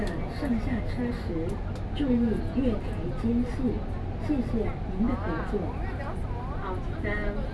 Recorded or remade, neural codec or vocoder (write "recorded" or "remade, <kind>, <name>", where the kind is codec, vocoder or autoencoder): recorded